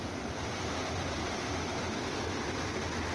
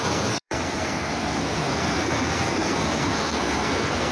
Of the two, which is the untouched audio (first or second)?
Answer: first